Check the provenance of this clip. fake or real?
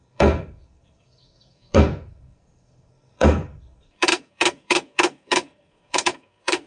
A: fake